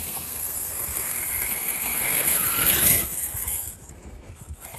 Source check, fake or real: fake